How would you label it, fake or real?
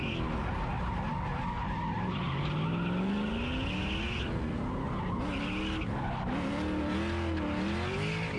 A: real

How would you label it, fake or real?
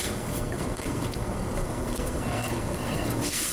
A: fake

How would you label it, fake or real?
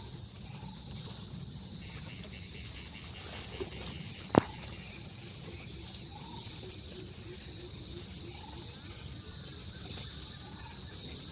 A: real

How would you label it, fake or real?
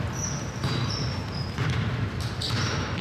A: fake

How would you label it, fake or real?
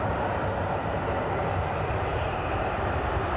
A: fake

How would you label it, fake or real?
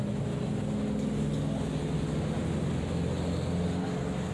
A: real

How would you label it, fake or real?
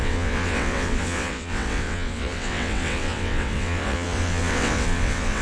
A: fake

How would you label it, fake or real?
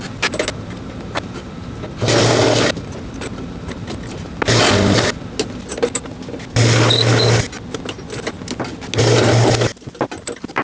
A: real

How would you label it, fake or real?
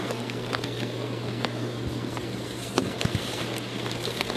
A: fake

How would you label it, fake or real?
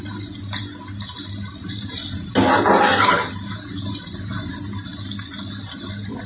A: real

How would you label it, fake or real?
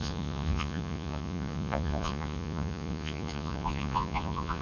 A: fake